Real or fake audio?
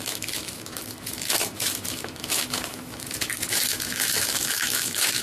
fake